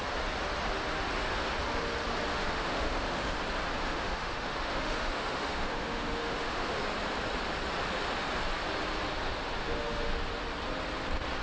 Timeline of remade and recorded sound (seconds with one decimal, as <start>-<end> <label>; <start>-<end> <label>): 0.0-2.3 recorded; 2.3-3.4 remade; 3.4-3.8 recorded; 3.8-6.8 remade; 6.8-9.6 recorded; 9.6-10.1 remade; 10.1-11.4 recorded